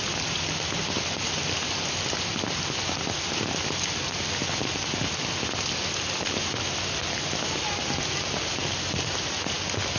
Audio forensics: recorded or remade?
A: recorded